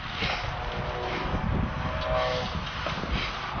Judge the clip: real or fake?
real